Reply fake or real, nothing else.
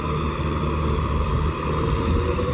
real